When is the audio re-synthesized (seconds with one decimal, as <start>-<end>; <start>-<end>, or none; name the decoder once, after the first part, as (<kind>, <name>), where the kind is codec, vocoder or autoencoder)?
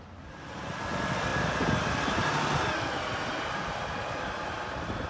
none